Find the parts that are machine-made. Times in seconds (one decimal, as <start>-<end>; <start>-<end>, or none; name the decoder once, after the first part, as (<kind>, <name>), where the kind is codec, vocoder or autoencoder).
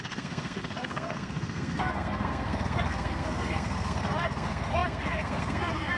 0.0-6.0 (codec, SNAC)